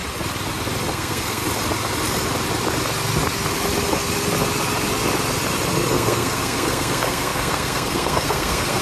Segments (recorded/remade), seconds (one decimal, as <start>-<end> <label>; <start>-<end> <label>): 0.0-0.9 recorded; 0.9-1.4 remade; 1.4-5.9 recorded; 5.9-8.8 remade